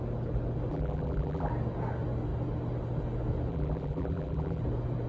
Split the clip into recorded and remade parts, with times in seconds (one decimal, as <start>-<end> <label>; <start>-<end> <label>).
0.0-0.7 recorded; 0.7-1.5 remade; 1.5-3.5 recorded; 3.5-4.6 remade; 4.6-5.1 recorded